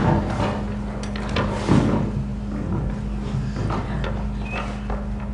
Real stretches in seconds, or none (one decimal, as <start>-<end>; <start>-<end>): 0.0-5.3